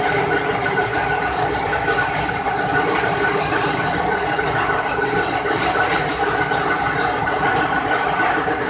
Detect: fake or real fake